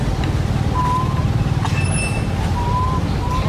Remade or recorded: recorded